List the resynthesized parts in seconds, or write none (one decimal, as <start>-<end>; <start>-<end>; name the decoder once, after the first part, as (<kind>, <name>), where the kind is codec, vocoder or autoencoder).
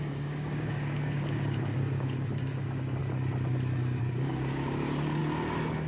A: 0.0-3.0 (codec, DAC); 4.0-5.2